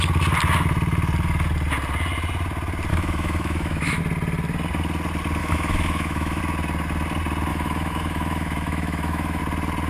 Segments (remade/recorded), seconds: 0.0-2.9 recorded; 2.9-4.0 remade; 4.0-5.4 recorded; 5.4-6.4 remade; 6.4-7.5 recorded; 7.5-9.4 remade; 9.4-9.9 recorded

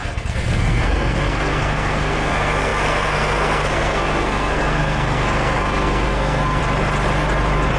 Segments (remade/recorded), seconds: 0.0-6.6 remade; 6.6-7.8 recorded

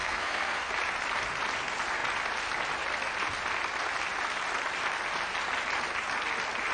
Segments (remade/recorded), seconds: 0.0-0.7 remade; 0.7-6.7 recorded

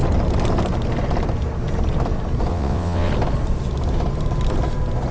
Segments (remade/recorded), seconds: 0.0-2.5 recorded; 2.5-3.1 remade; 3.1-5.1 recorded

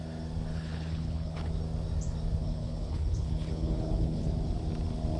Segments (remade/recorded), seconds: 0.0-0.5 recorded; 0.5-1.5 remade; 1.5-2.4 recorded; 2.4-4.3 remade; 4.3-5.2 recorded

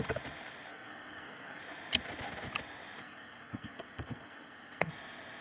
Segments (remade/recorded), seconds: 0.0-0.7 recorded; 0.7-1.6 remade; 1.6-3.0 recorded; 3.0-4.9 remade; 4.9-5.4 recorded

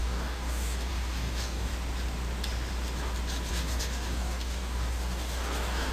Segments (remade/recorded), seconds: 0.0-1.7 remade; 1.7-3.5 recorded; 3.5-5.9 remade